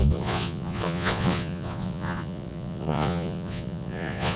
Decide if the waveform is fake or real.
fake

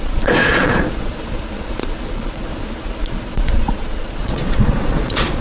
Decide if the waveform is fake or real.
fake